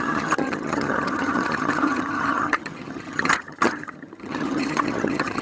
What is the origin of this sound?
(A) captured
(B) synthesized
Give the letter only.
B